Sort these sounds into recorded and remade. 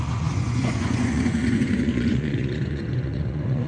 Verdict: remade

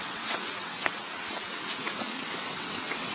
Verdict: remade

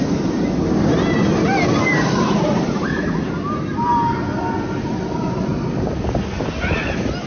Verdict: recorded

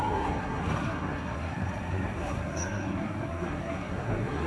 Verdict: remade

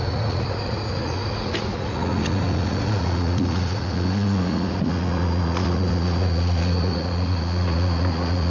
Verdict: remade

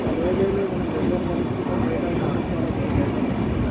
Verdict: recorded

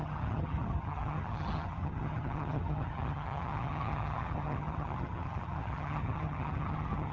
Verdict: remade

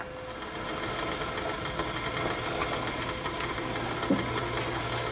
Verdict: recorded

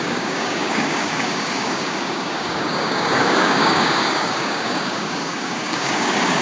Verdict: remade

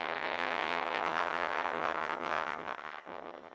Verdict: remade